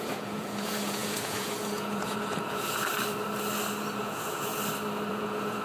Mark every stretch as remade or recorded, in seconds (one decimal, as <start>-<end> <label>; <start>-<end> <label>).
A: 0.0-2.9 remade; 2.9-4.0 recorded; 4.0-4.5 remade; 4.5-5.1 recorded; 5.1-5.6 remade